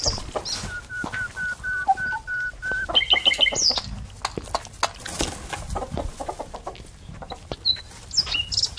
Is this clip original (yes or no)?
yes